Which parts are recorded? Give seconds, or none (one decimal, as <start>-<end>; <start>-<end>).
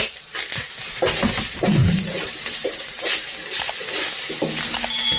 0.0-1.8; 3.0-5.2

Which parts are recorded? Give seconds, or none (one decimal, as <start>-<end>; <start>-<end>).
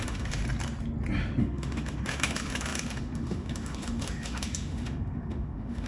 0.4-1.4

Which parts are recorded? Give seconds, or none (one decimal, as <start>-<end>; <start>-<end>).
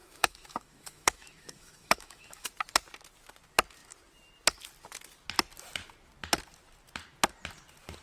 2.5-8.0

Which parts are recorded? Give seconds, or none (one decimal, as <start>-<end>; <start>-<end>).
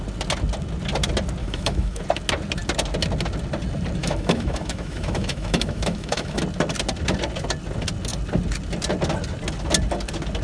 0.0-1.4; 2.0-4.0; 6.4-10.4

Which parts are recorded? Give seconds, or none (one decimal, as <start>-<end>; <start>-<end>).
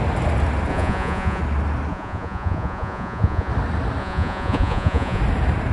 0.0-0.7; 1.4-1.9; 3.5-4.0; 5.2-5.7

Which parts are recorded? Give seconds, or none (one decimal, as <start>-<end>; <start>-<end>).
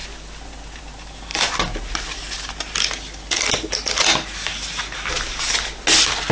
0.0-6.3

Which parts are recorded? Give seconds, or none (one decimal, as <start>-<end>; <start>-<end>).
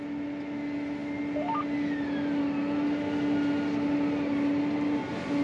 0.0-5.4